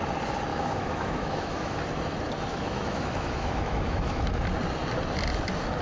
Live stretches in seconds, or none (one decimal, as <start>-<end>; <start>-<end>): 0.0-0.5; 1.8-2.5; 4.3-5.8